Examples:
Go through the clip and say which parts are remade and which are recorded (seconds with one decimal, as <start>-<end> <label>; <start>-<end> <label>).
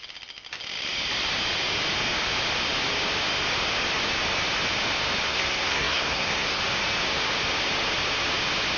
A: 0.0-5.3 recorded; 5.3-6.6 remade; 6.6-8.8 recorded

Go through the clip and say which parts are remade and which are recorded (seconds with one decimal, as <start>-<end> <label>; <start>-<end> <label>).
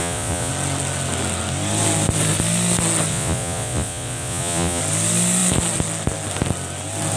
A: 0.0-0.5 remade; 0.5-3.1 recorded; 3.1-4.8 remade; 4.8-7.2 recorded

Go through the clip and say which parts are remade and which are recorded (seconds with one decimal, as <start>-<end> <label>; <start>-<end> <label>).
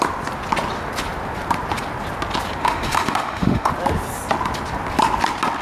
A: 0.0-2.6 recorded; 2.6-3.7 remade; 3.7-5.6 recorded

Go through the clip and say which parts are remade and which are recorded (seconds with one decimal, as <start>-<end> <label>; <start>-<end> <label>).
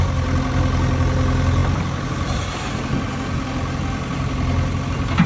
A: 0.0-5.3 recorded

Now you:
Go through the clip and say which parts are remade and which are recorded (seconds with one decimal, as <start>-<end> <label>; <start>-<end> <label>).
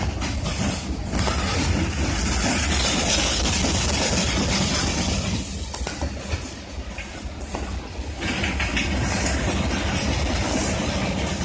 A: 0.0-11.4 recorded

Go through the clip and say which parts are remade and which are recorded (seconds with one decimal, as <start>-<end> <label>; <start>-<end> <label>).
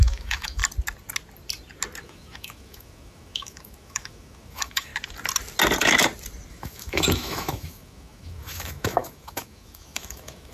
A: 0.0-0.6 remade; 0.6-2.0 recorded; 2.0-4.9 remade; 4.9-6.5 recorded; 6.5-10.5 remade